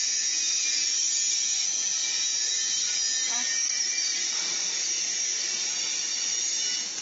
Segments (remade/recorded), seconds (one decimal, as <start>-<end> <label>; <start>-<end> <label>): 0.0-2.0 recorded; 2.0-2.5 remade; 2.5-7.0 recorded

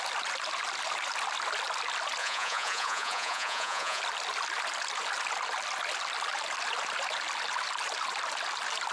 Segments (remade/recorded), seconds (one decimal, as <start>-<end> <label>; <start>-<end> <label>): 0.0-2.2 recorded; 2.2-4.0 remade; 4.0-8.9 recorded

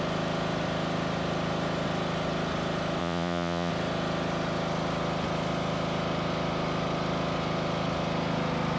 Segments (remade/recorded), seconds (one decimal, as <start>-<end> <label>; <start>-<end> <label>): 0.0-3.0 recorded; 3.0-3.7 remade; 3.7-8.8 recorded

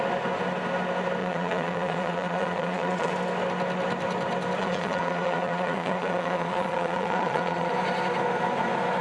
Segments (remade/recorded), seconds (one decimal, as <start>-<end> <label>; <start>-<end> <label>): 0.0-1.2 recorded; 1.2-3.1 remade; 3.1-4.6 recorded; 4.6-7.7 remade; 7.7-9.0 recorded

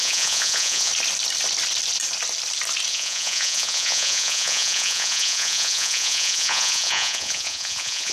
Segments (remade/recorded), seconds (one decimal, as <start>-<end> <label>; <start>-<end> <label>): 0.0-0.9 remade; 0.9-2.9 recorded; 2.9-8.1 remade

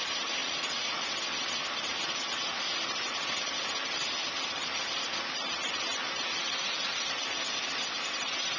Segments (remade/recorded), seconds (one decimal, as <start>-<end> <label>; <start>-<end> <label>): 0.0-0.4 recorded; 0.4-1.1 remade; 1.1-8.6 recorded

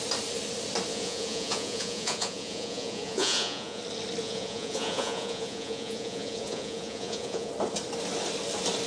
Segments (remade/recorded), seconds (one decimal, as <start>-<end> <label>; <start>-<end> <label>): 0.0-0.9 recorded; 0.9-3.8 remade; 3.8-4.2 recorded; 4.2-7.5 remade; 7.5-8.9 recorded

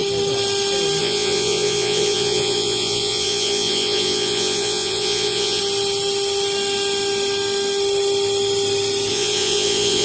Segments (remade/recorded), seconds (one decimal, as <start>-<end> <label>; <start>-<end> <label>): 0.0-1.0 recorded; 1.0-5.6 remade; 5.6-9.1 recorded; 9.1-10.0 remade